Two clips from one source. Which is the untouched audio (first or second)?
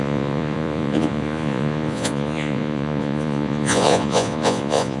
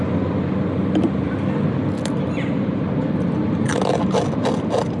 second